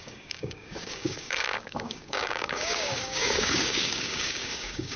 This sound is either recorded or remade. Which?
remade